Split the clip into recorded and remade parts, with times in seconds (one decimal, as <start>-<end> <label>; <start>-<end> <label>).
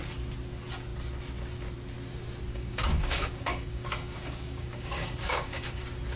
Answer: 0.0-2.5 recorded; 2.5-5.8 remade; 5.8-6.2 recorded